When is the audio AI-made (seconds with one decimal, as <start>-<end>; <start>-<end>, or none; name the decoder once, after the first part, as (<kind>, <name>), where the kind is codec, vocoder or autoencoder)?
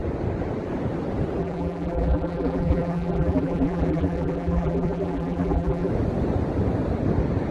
1.4-5.9 (vocoder, BigVGAN v2)